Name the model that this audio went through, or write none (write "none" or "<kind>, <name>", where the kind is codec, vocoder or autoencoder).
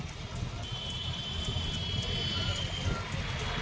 none